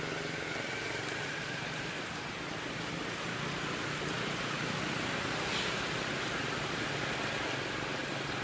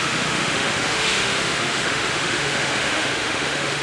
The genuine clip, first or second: first